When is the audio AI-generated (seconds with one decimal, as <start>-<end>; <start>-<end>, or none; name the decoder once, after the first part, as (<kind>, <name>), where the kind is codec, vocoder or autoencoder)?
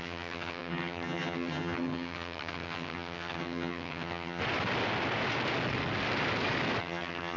0.0-4.4 (vocoder, HiFi-GAN); 6.8-7.4